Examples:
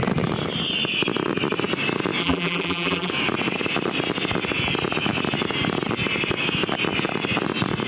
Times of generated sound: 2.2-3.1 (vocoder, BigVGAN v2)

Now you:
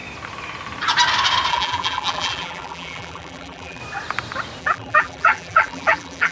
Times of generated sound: 1.5-3.8 (vocoder, BigVGAN v2); 4.6-6.3

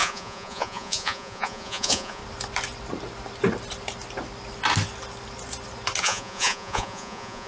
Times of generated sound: 0.0-2.2 (vocoder, Vocos); 6.0-7.5